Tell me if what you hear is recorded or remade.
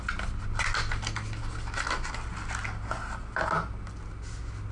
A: recorded